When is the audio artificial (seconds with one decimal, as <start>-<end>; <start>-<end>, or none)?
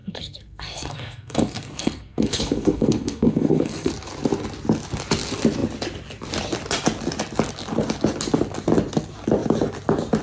0.0-3.9